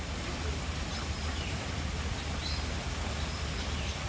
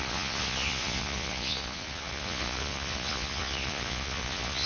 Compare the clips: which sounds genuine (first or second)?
first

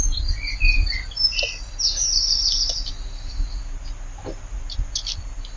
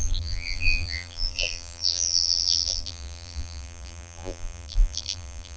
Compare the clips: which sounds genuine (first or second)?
first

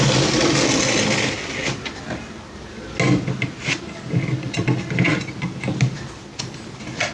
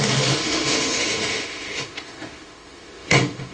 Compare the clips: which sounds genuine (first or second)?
first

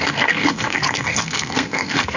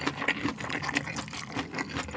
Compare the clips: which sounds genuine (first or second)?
second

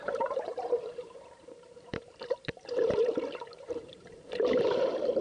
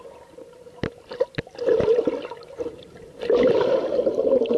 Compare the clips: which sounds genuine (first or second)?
second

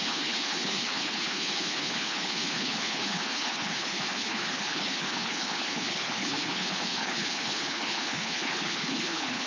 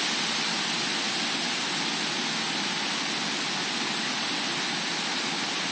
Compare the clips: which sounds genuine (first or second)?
second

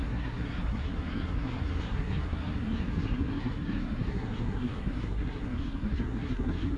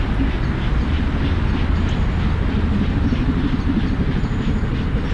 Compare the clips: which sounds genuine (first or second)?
second